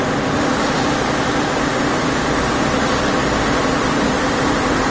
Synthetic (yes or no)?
no